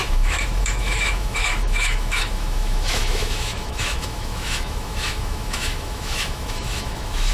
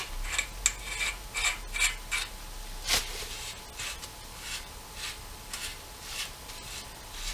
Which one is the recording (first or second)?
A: second